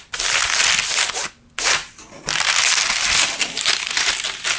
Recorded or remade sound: recorded